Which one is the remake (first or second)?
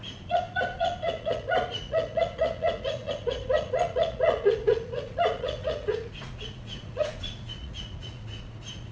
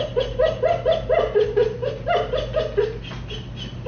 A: first